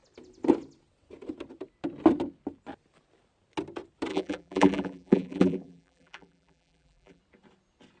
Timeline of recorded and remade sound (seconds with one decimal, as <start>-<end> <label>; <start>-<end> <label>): 0.0-4.1 recorded; 4.1-7.2 remade; 7.2-8.0 recorded